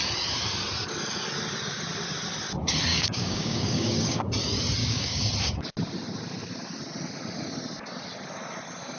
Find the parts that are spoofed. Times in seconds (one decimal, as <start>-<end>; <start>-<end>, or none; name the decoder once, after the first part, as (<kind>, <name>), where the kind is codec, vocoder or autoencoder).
2.9-4.2 (codec, DAC); 4.8-5.3

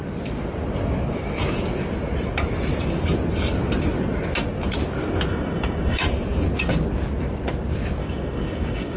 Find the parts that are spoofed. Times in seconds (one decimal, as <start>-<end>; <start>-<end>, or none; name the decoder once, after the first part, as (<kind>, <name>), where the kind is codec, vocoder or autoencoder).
5.3-6.0 (codec, DAC); 8.0-9.0

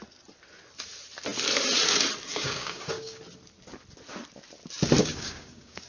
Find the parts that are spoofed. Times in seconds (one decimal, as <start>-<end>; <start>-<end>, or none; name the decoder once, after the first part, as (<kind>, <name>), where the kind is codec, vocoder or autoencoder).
2.3-3.2 (codec, DAC); 5.0-5.9

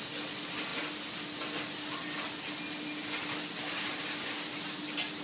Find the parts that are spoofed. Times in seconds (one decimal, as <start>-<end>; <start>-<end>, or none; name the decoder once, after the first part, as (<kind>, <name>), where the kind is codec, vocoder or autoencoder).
none

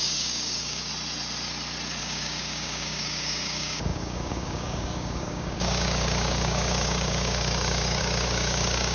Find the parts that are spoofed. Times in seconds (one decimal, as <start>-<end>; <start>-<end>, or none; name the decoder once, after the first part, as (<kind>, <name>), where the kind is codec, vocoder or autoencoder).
0.0-0.9 (codec, DAC); 2.0-8.9

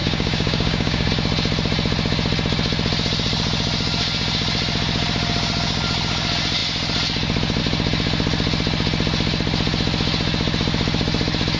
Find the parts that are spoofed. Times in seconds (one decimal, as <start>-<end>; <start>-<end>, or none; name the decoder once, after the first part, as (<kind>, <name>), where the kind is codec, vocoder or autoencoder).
0.0-1.1 (codec, DAC)

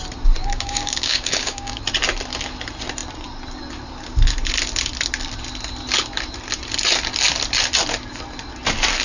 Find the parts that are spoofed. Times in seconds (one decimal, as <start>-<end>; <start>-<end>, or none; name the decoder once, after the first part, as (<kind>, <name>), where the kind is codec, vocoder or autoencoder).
0.4-1.8 (codec, DAC)

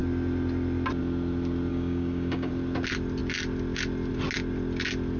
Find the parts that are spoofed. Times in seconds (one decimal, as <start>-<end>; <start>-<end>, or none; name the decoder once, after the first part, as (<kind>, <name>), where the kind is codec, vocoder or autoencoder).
1.7-2.5 (codec, DAC)